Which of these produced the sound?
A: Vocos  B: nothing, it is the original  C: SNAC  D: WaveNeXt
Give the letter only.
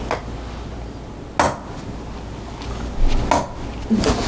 B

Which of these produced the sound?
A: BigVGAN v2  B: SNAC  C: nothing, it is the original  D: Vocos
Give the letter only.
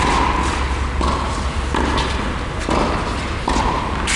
C